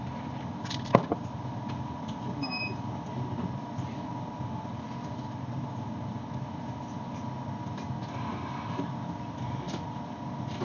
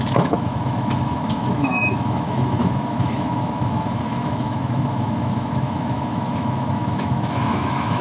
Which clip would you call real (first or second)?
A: first